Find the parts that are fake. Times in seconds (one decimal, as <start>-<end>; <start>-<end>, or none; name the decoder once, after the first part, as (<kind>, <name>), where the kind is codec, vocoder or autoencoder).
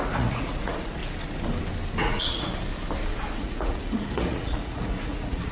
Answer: 0.0-1.0 (vocoder, Vocos); 2.0-2.5; 3.4-5.5